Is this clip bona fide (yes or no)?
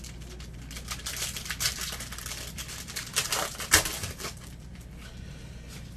yes